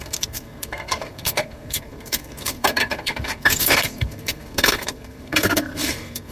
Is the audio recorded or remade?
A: remade